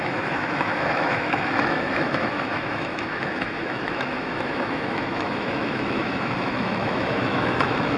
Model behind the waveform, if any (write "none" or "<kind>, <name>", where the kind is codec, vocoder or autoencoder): autoencoder, DAC-VAE